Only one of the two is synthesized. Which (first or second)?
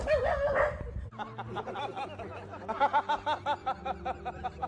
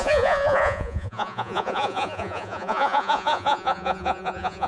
second